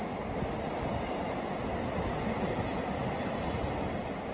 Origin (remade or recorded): recorded